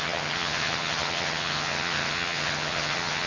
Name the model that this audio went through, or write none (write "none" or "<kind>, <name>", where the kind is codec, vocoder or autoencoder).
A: vocoder, HiFi-GAN